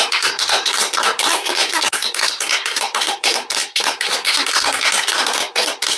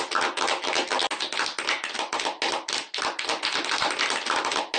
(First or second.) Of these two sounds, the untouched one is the second